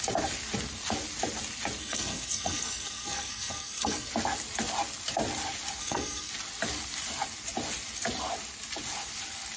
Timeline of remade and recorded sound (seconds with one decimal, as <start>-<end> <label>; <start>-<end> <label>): 0.0-1.8 recorded; 1.8-4.1 remade; 4.1-5.8 recorded; 5.8-6.3 remade; 6.3-9.6 recorded